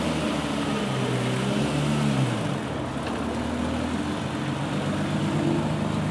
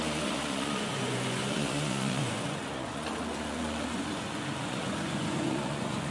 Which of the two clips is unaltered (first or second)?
first